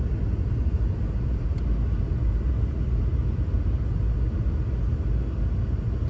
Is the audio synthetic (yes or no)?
no